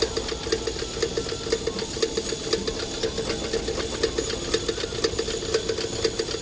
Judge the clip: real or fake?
real